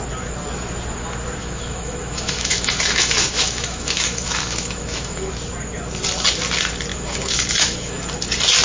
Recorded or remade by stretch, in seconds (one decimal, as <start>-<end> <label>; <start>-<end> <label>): 0.0-1.4 recorded; 1.4-5.3 remade; 5.3-6.9 recorded; 6.9-8.0 remade; 8.0-8.6 recorded